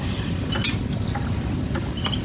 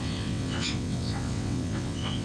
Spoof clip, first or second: second